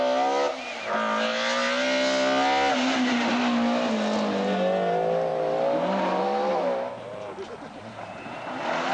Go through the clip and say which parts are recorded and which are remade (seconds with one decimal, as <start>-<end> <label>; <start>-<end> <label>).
0.0-8.9 recorded